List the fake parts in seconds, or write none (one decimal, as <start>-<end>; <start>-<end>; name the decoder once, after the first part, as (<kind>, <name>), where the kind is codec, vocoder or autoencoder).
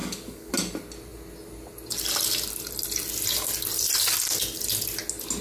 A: 0.0-0.5 (codec, DAC)